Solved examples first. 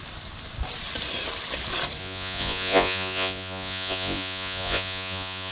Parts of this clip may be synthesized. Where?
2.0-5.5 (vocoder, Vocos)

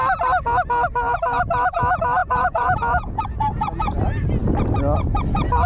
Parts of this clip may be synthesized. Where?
2.2-4.0 (vocoder, Vocos)

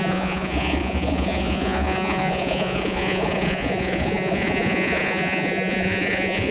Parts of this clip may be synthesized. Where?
0.0-6.5 (vocoder, Vocos)

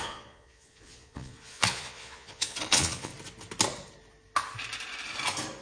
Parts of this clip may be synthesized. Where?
0.0-3.1 (vocoder, Vocos)